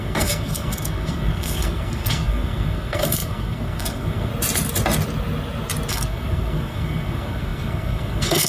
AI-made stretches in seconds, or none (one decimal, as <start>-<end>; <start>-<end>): 0.0-4.3; 5.9-8.5